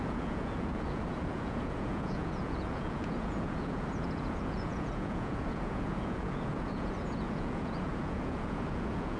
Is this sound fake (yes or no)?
yes